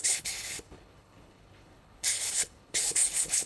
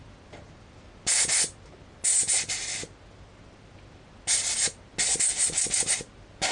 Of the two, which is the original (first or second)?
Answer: second